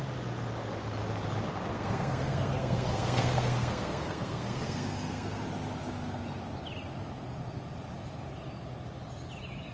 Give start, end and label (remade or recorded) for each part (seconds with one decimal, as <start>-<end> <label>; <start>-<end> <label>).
0.0-1.7 recorded; 1.7-5.4 remade; 5.4-9.7 recorded